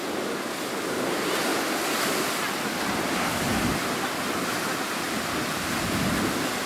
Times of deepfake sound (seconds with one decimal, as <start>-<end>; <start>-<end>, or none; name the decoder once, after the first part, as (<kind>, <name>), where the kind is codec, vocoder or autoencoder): none